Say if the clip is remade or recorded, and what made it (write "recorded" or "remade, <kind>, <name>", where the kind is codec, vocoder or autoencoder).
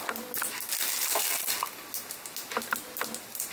recorded